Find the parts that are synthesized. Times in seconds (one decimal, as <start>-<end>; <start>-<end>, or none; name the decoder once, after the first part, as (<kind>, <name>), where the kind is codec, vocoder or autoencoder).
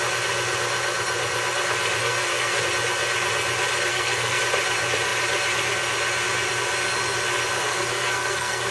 2.0-2.6 (codec, SNAC); 3.9-4.4; 7.6-8.7